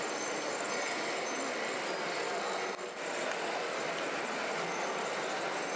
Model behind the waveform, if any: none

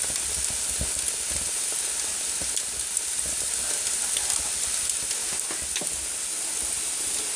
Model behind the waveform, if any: none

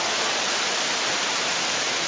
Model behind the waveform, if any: none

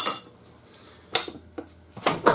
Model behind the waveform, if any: none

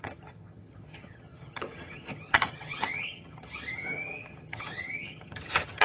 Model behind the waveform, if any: vocoder, HiFi-GAN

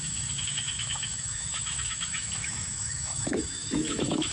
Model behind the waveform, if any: autoencoder, DAC-VAE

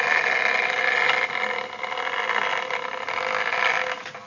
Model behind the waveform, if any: none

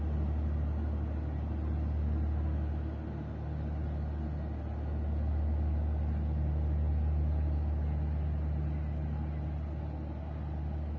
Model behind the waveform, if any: none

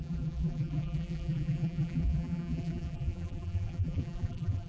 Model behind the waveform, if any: vocoder, BigVGAN v2